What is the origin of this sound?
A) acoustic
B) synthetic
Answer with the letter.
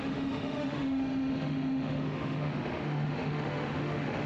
B